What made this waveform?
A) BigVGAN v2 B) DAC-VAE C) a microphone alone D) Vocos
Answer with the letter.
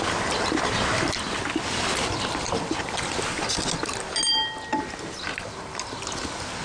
C